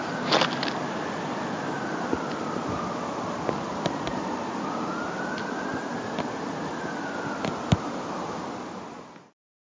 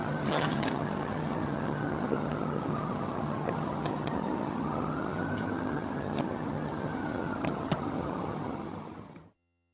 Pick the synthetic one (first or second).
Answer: second